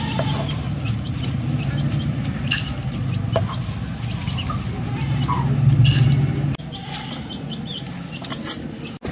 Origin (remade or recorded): recorded